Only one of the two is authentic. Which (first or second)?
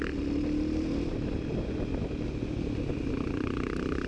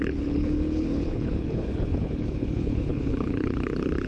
first